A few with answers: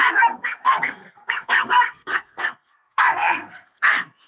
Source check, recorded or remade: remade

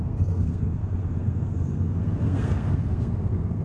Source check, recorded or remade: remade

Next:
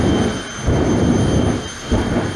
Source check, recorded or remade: recorded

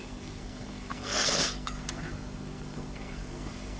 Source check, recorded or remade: remade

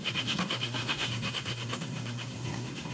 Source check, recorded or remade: remade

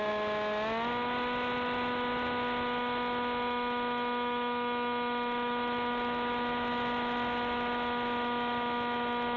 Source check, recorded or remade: recorded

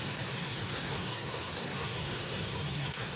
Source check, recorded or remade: remade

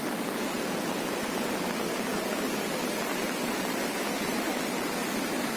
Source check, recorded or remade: recorded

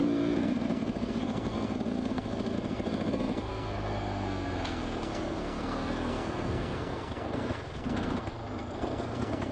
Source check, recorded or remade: remade